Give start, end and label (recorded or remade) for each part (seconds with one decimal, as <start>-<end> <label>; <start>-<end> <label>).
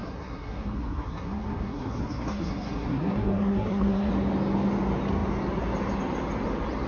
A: 0.0-4.1 remade; 4.1-6.9 recorded